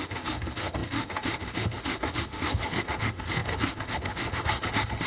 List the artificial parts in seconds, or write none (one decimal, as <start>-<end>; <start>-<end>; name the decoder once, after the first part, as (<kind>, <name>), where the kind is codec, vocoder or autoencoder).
0.0-5.1 (autoencoder, DAC-VAE)